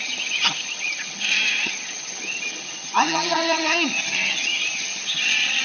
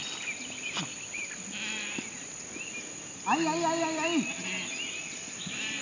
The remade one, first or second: first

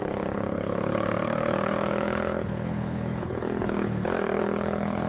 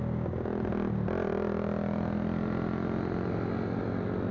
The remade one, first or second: first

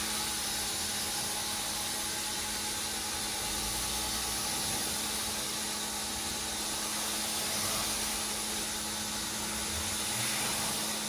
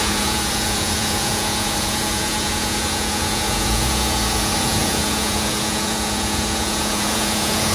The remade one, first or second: second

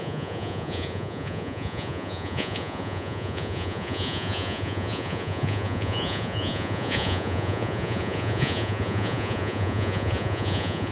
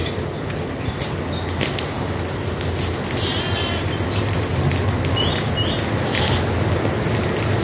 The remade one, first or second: first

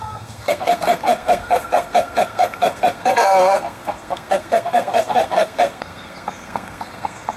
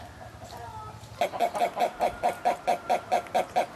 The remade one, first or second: first